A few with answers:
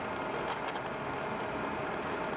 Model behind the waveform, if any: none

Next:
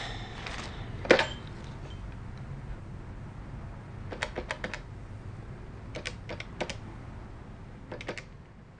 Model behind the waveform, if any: none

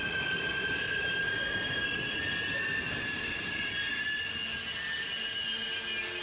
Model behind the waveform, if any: none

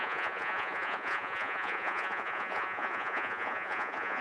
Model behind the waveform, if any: vocoder, Vocos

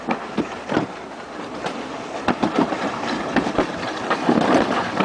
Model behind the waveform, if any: vocoder, BigVGAN v2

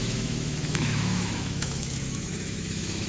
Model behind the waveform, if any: autoencoder, DAC-VAE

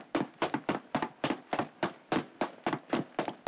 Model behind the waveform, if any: none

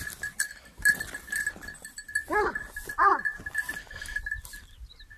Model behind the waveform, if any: vocoder, BigVGAN v2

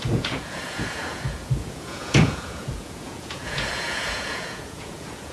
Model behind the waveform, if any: vocoder, Vocos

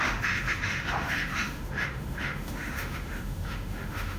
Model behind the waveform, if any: autoencoder, DAC-VAE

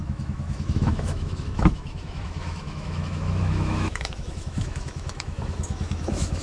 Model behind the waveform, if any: autoencoder, DAC-VAE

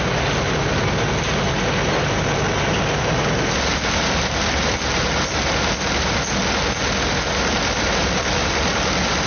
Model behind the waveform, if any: none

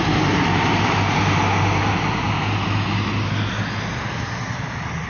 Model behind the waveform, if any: none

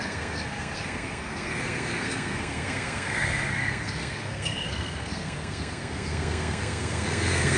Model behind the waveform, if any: codec, SNAC